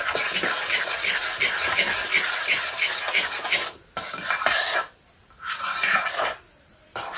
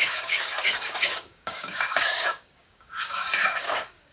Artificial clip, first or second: second